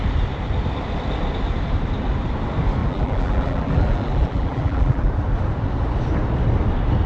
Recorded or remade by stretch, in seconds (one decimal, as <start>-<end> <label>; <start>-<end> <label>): 0.0-2.8 recorded; 2.8-5.1 remade; 5.1-7.1 recorded